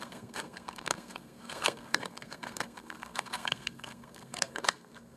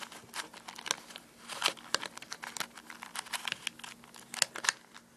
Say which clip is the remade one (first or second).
first